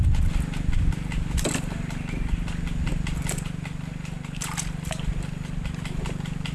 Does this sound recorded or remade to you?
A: recorded